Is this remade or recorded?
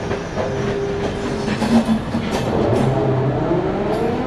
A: recorded